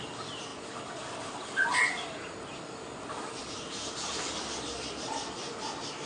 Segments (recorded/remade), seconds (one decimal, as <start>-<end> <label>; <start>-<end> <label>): 0.0-6.1 recorded